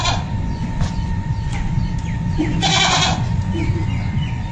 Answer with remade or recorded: remade